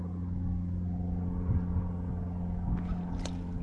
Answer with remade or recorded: recorded